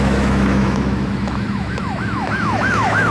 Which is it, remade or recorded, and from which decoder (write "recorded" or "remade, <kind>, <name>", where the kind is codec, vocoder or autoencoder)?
remade, autoencoder, DAC-VAE